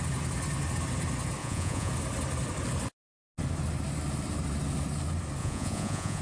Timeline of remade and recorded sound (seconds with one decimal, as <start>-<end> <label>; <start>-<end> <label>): 0.0-1.4 recorded; 1.4-1.9 remade; 1.9-5.4 recorded; 5.4-6.2 remade